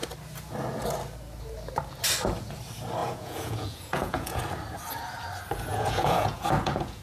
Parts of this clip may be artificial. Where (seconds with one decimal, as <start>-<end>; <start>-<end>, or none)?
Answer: 3.0-4.4; 5.7-7.0